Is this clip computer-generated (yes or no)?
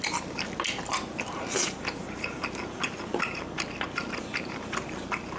no